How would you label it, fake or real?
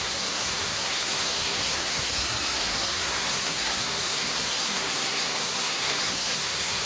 fake